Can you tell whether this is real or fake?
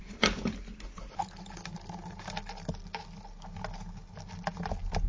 real